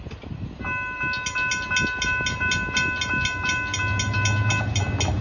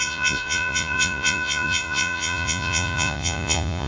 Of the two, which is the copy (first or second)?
second